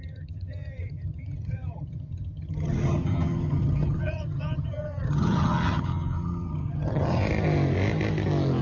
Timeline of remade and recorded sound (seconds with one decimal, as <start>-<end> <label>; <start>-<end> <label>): 0.0-7.2 remade; 7.2-8.6 recorded